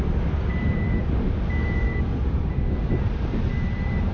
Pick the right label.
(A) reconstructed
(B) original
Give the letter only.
A